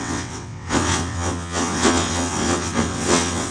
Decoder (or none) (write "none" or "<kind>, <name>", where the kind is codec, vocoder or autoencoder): vocoder, WaveNeXt